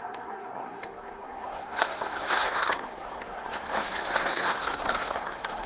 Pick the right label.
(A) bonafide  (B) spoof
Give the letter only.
B